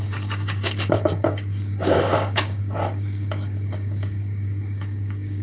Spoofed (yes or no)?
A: yes